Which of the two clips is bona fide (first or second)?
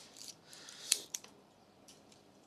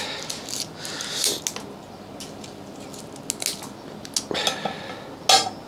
second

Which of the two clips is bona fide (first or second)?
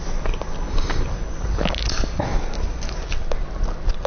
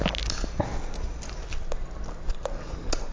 second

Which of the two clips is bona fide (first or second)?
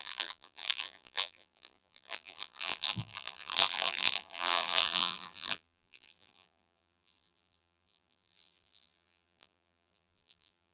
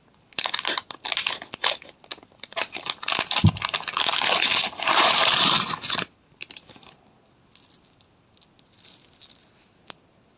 second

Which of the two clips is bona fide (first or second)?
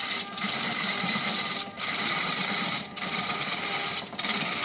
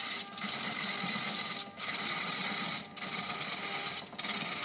second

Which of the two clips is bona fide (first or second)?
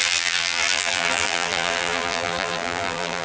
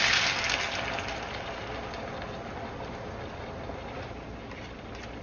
second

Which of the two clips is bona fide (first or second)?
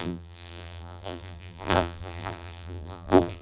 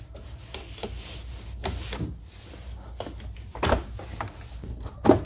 second